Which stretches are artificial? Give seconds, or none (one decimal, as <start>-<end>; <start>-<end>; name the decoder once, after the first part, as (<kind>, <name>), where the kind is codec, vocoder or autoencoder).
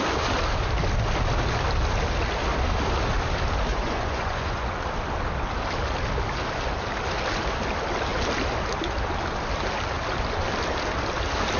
3.7-4.7 (vocoder, Vocos)